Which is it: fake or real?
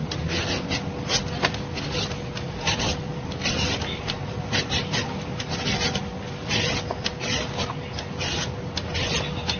real